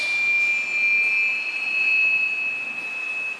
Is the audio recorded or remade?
recorded